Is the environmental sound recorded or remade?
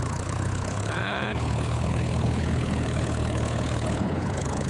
remade